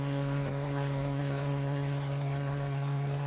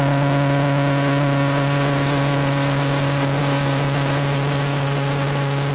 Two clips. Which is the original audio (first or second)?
second